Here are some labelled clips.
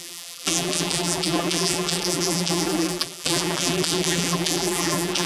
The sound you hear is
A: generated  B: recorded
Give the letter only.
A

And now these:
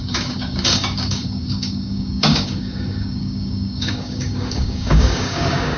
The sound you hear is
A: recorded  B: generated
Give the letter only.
B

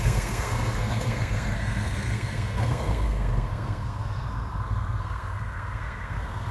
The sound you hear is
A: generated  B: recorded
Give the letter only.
A